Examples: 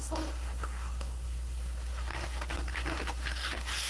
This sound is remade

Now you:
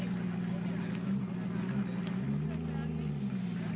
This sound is recorded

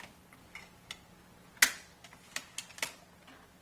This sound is recorded